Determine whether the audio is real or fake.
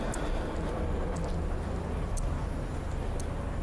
real